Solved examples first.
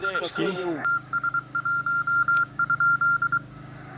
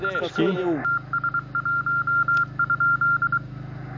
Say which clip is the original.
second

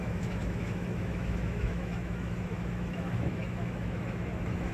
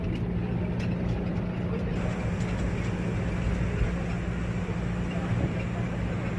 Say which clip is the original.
second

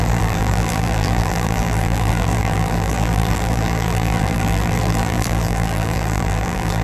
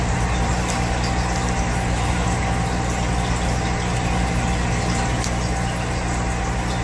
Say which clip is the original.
second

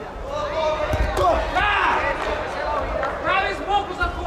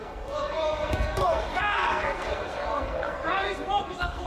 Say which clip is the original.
first